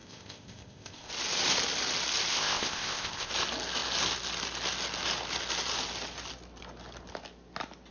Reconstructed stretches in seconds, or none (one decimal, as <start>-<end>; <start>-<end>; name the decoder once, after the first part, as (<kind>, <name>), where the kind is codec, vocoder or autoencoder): 0.0-1.1 (codec, ZipCodec); 2.3-3.3